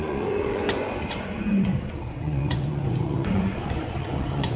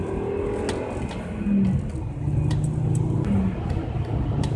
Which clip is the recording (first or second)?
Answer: second